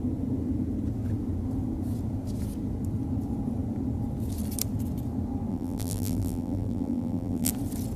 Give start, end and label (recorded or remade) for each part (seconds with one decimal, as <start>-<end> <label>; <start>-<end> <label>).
0.0-5.5 recorded; 5.5-7.5 remade; 7.5-8.0 recorded